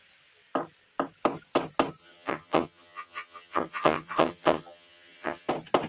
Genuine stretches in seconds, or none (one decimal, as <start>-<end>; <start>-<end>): 0.0-2.0; 5.5-5.9